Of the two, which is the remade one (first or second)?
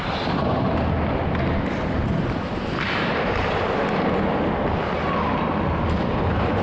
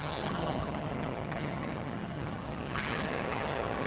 second